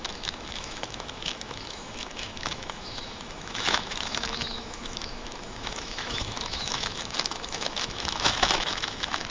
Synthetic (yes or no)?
yes